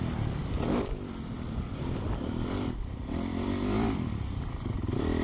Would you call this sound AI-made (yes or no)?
yes